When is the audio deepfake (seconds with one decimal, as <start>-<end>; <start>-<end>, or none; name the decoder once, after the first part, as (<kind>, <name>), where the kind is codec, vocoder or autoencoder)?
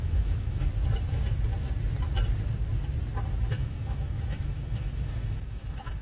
0.0-0.7 (autoencoder, DAC-VAE); 3.5-6.0